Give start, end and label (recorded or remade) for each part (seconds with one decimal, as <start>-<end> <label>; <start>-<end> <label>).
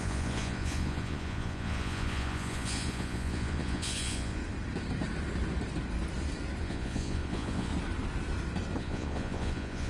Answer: 0.0-4.4 remade; 4.4-6.6 recorded; 6.6-7.7 remade; 7.7-8.8 recorded; 8.8-9.9 remade